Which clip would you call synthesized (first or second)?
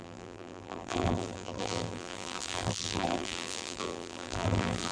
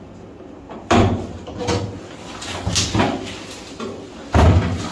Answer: first